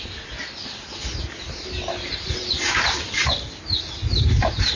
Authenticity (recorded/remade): recorded